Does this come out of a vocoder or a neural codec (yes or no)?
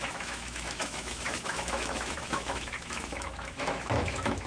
yes